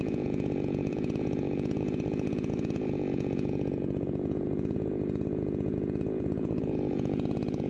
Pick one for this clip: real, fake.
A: fake